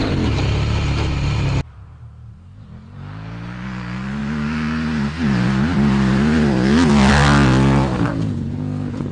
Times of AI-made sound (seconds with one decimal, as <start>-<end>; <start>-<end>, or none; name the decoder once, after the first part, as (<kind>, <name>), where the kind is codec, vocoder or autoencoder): 8.1-9.1 (vocoder, Vocos)

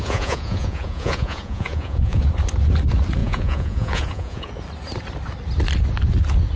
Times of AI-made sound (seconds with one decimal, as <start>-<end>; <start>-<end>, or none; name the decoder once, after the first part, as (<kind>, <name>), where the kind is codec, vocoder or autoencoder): 0.0-2.2 (vocoder, Vocos); 3.2-4.5

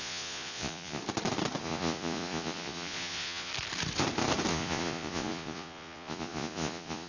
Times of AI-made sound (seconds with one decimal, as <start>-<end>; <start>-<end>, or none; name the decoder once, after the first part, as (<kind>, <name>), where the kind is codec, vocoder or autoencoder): 0.0-1.0 (vocoder, Vocos); 1.6-3.5; 4.5-7.1

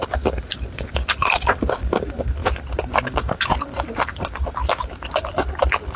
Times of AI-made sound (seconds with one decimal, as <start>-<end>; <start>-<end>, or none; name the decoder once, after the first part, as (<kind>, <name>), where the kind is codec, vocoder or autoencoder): none

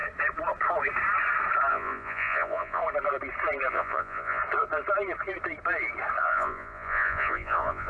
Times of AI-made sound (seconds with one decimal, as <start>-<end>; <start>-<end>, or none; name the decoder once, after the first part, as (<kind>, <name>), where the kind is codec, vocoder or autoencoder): 1.7-2.8 (vocoder, Vocos); 3.7-4.4; 6.2-7.9

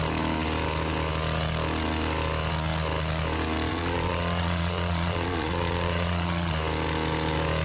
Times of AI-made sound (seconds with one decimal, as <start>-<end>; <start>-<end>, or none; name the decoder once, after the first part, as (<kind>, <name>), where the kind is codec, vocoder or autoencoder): 3.7-6.5 (vocoder, Vocos)

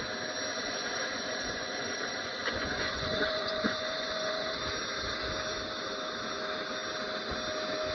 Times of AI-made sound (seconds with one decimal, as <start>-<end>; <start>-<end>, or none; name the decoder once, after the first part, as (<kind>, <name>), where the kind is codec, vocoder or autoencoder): 0.5-4.6 (vocoder, Vocos)

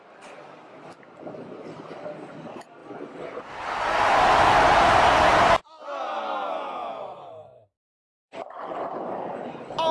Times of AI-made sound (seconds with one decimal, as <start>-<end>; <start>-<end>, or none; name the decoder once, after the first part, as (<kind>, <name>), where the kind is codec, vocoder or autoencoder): none